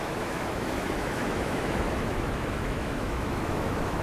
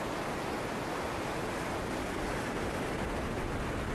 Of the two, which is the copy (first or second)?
first